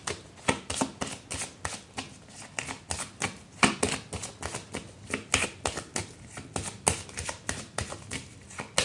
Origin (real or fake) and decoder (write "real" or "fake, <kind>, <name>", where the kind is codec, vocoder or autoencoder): real